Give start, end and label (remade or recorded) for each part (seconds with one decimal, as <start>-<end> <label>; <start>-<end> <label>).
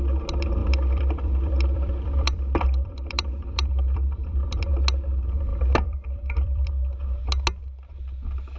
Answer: 0.0-0.6 recorded; 0.6-4.6 remade; 4.6-5.5 recorded; 5.5-6.7 remade; 6.7-8.6 recorded